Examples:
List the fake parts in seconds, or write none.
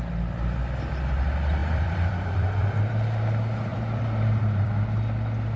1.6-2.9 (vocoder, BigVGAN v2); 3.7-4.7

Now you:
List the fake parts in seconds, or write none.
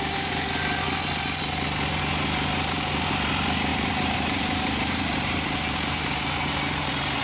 3.7-7.2 (vocoder, BigVGAN v2)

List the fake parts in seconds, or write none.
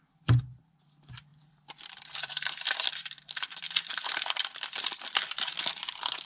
1.3-5.1 (vocoder, BigVGAN v2)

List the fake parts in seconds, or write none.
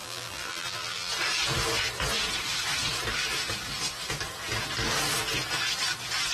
0.0-1.1 (vocoder, BigVGAN v2)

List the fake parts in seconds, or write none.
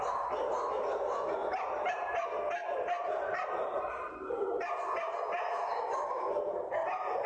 1.4-2.1 (vocoder, BigVGAN v2); 2.6-4.1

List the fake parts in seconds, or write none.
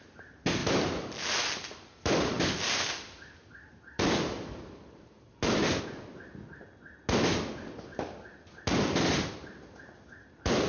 0.6-5.8 (vocoder, BigVGAN v2); 7.9-10.7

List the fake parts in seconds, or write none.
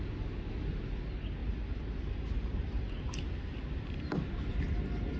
1.4-4.3 (vocoder, BigVGAN v2)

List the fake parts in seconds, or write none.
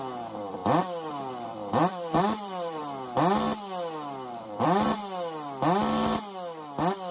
0.0-0.6 (vocoder, BigVGAN v2); 1.1-2.8; 4.4-5.0